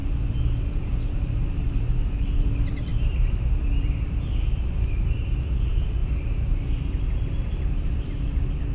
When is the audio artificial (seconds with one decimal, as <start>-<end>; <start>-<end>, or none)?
1.1-8.7